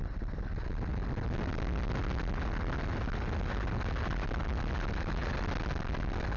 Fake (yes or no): no